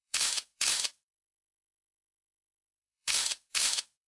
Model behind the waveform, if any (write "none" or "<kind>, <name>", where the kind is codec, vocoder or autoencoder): autoencoder, DAC-VAE